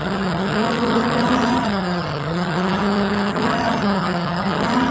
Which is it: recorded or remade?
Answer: remade